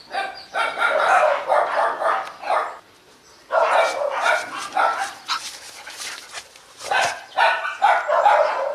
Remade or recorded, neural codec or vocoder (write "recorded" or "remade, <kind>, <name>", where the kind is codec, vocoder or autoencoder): recorded